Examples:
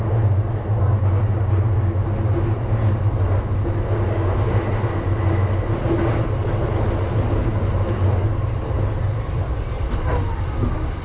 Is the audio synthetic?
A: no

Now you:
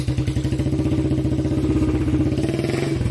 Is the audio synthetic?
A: no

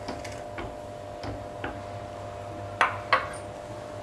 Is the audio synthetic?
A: no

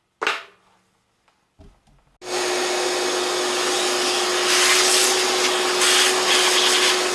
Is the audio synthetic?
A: no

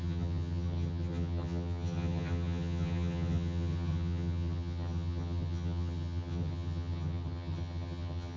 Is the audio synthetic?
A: yes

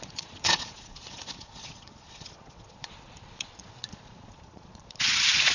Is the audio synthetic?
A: yes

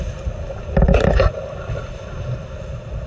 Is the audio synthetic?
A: no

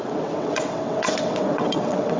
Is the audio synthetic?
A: yes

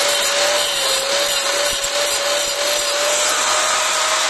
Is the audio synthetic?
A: no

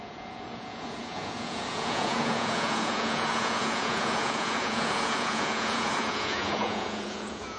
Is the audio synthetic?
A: yes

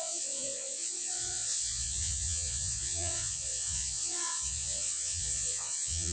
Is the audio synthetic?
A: yes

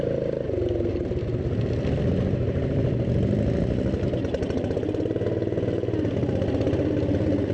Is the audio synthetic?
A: no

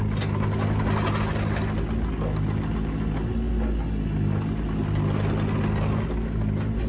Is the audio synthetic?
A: no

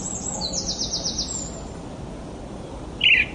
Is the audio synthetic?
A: no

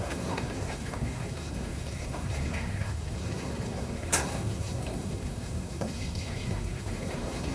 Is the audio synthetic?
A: yes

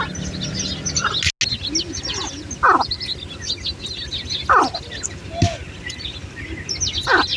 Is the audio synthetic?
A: no